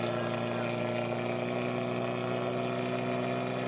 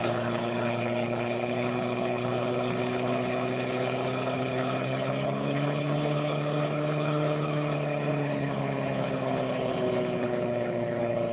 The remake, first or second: second